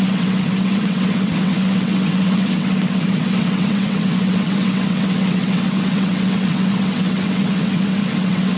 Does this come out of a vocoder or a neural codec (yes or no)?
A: yes